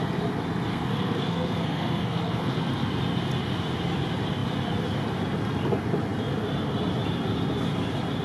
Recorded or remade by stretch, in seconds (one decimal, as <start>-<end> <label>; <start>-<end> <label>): 0.0-0.7 recorded; 0.7-2.7 remade; 2.7-8.2 recorded